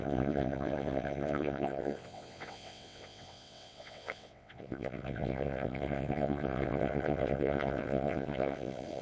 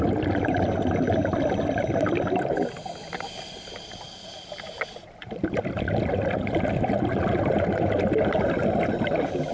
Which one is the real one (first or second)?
second